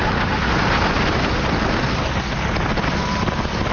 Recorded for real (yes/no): yes